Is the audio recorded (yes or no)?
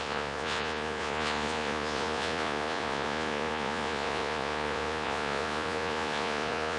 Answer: no